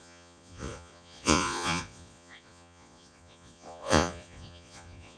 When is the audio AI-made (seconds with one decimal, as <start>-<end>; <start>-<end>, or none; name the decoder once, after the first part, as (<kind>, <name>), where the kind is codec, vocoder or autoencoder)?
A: 0.0-5.2 (vocoder, Vocos)